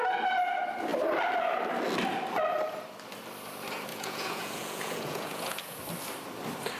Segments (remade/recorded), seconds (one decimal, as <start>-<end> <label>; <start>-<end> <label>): 0.0-3.9 recorded; 3.9-5.8 remade; 5.8-6.8 recorded